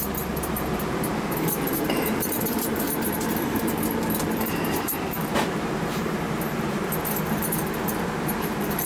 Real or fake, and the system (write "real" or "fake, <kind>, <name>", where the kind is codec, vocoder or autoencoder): fake, vocoder, BigVGAN v2